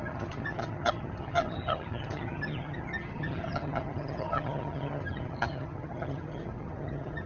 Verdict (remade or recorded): remade